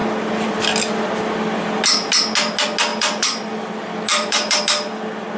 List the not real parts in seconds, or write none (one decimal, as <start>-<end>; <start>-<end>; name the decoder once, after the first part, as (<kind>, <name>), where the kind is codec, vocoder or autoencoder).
2.9-3.4 (vocoder, BigVGAN v2); 4.1-4.6

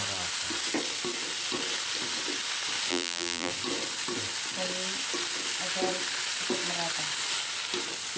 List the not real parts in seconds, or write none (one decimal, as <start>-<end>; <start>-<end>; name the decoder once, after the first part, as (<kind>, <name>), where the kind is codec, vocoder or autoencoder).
2.9-3.5 (vocoder, BigVGAN v2)